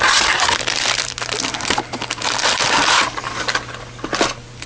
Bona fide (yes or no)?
yes